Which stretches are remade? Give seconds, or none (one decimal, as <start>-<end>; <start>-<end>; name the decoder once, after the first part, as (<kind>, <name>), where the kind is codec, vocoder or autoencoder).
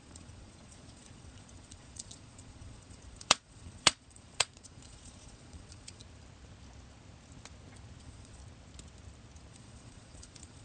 0.0-6.0 (vocoder, Vocos); 8.0-8.4; 9.5-10.6